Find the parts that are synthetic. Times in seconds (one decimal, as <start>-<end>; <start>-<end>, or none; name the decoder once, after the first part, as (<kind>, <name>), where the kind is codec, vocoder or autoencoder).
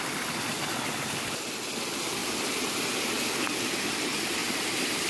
none